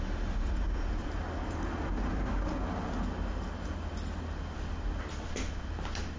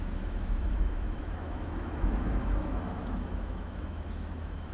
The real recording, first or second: first